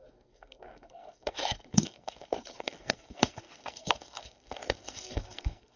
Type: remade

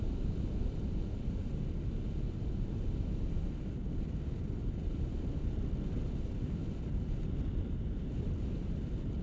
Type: recorded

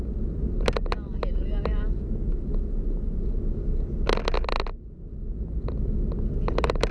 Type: recorded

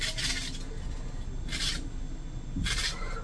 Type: recorded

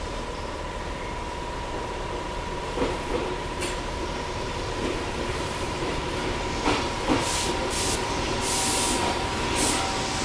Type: recorded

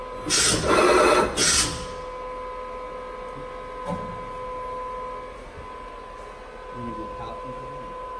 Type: recorded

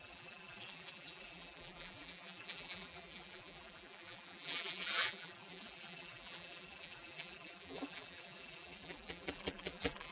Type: remade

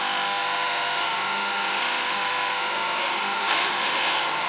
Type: remade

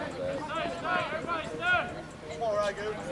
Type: recorded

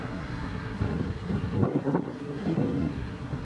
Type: remade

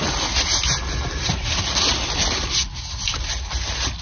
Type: recorded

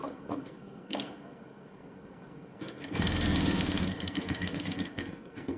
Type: remade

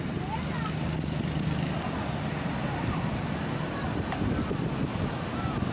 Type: recorded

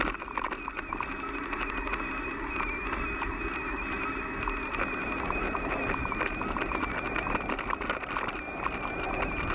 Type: recorded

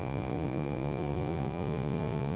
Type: remade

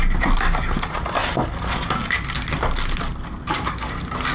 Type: recorded